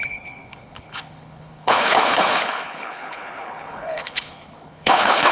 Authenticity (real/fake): fake